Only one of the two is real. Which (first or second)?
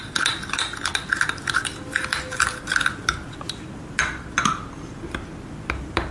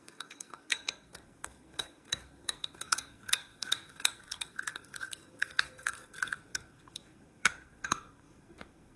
first